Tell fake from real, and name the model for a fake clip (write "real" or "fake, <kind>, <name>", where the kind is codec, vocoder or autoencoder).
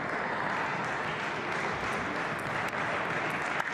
real